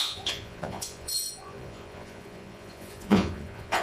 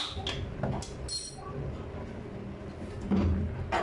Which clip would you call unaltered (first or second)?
second